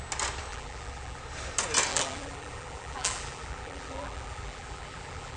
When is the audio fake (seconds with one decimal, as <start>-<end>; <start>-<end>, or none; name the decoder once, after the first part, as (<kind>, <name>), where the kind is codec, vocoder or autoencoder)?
0.5-1.2 (vocoder, BigVGAN v2); 1.9-5.4